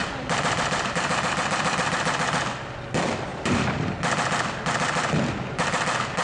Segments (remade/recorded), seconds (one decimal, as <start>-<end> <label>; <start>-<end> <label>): 0.0-2.4 remade; 2.4-3.3 recorded; 3.3-4.0 remade; 4.0-6.2 recorded